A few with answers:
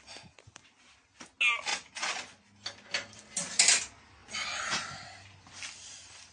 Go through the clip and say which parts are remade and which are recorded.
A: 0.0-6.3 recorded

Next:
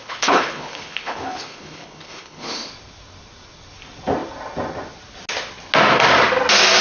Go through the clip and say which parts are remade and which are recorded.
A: 0.0-2.7 remade; 2.7-6.8 recorded

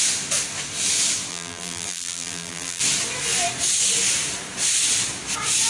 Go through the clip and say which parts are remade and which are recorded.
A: 0.0-1.3 recorded; 1.3-2.8 remade; 2.8-5.7 recorded

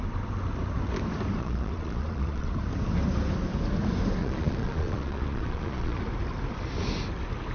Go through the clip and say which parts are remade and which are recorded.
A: 0.0-1.4 recorded; 1.4-2.5 remade; 2.5-4.2 recorded; 4.2-6.0 remade; 6.0-7.5 recorded

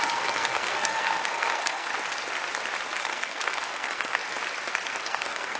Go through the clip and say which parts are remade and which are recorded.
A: 0.0-1.9 remade; 1.9-3.0 recorded; 3.0-4.2 remade; 4.2-4.7 recorded; 4.7-5.6 remade

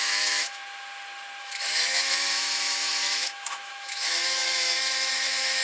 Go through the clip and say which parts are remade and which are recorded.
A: 0.0-0.6 remade; 0.6-1.4 recorded; 1.4-5.6 remade